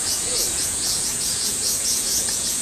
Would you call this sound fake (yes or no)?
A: yes